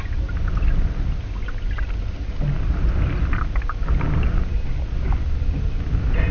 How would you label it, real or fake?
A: real